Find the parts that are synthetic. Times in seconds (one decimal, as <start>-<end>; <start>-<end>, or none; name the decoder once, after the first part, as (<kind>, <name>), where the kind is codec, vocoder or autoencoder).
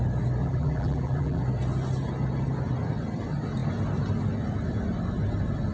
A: 0.4-1.4 (vocoder, BigVGAN v2)